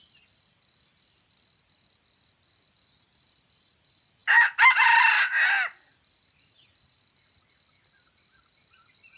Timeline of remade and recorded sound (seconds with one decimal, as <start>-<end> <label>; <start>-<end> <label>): 0.0-9.2 recorded